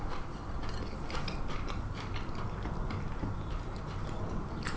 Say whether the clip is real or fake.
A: real